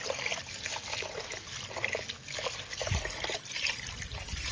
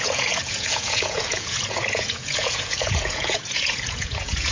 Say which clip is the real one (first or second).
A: first